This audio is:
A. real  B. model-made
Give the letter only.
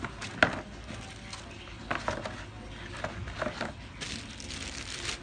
A